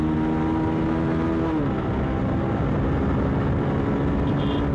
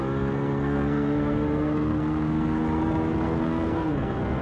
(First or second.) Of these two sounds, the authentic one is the first